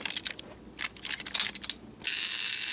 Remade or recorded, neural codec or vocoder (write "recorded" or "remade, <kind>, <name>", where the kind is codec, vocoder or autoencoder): recorded